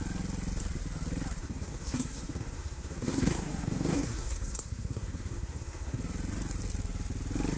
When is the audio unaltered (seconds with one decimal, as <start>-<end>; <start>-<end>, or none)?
0.0-1.4; 6.0-7.6